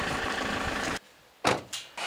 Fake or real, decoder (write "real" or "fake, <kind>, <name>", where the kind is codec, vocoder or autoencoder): real